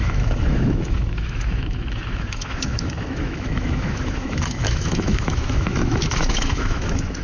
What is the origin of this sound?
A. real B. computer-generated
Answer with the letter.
B